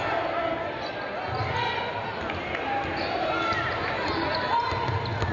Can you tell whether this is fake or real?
real